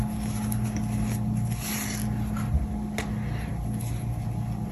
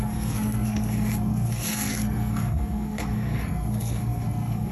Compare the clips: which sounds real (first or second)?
first